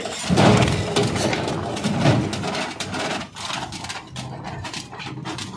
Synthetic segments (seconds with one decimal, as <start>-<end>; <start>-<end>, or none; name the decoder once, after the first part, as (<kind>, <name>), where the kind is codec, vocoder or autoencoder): none